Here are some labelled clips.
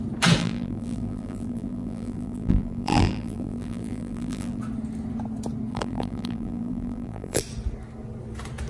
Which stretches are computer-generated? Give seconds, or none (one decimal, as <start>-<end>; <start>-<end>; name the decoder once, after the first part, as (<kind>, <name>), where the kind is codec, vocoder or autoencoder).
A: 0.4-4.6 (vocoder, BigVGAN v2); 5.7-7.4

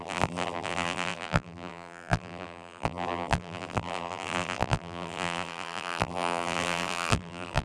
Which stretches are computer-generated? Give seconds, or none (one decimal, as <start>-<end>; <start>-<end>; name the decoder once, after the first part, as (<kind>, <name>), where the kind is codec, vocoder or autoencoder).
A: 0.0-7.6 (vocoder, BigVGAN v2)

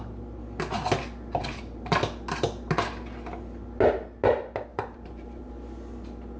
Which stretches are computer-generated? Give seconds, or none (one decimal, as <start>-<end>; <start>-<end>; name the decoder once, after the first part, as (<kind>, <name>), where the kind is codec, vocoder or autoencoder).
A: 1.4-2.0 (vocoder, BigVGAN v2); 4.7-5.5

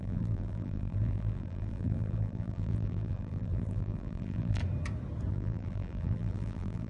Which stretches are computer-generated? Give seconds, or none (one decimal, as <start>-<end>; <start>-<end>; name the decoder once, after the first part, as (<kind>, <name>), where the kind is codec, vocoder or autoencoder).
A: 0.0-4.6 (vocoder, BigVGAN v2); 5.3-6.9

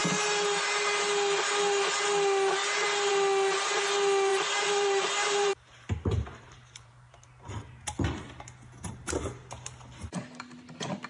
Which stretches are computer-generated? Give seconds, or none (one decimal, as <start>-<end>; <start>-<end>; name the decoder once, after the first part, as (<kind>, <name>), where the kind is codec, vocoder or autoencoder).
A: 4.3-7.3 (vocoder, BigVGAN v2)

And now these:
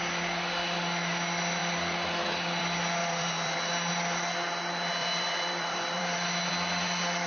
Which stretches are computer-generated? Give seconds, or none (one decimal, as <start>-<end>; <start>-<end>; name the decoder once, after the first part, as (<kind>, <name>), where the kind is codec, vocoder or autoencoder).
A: 3.0-3.7 (vocoder, BigVGAN v2); 5.0-6.5

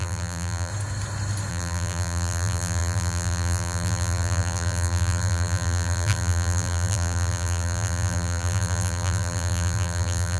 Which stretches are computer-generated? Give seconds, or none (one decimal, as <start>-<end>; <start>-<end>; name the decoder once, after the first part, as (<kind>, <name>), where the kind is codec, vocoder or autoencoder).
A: 0.0-0.7 (vocoder, BigVGAN v2); 1.5-10.4

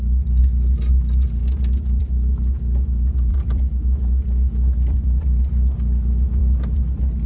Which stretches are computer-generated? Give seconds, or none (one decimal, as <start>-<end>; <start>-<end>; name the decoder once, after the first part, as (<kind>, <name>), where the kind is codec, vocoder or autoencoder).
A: 0.4-0.9 (vocoder, BigVGAN v2); 1.4-2.4; 3.3-5.2; 6.4-7.3